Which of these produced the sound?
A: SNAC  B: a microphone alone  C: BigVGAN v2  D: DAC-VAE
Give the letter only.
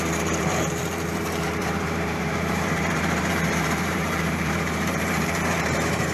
C